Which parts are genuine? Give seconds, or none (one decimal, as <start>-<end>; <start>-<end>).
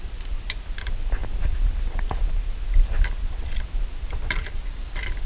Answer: 0.0-5.3